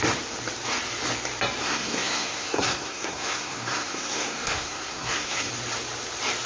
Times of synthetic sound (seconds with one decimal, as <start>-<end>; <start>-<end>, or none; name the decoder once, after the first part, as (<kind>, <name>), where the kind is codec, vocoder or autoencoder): 1.6-5.5 (codec, SNAC)